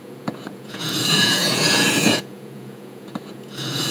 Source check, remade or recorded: remade